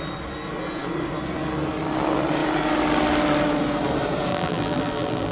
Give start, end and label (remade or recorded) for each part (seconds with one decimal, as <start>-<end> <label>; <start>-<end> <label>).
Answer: 0.0-4.3 recorded; 4.3-5.3 remade